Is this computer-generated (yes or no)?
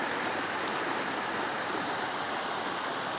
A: no